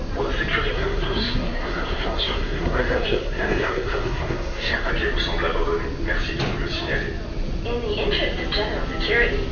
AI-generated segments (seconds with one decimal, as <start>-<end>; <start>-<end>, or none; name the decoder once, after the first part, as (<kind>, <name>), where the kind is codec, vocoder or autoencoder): 0.7-4.9 (codec, SNAC)